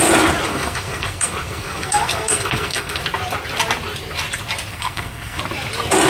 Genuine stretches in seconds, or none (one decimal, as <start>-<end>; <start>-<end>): 0.0-0.5; 3.0-4.7; 5.4-6.1